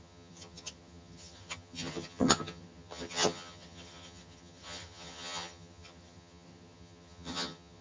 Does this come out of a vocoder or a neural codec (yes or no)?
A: yes